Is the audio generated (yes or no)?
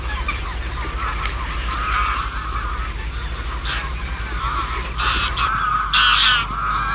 no